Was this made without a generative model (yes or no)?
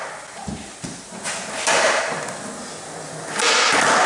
yes